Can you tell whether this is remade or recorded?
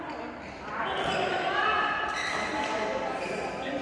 recorded